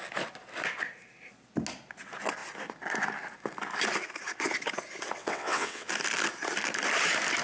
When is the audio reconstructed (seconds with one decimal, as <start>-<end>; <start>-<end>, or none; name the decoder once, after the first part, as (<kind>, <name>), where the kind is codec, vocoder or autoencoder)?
5.2-5.9 (vocoder, WaveNeXt)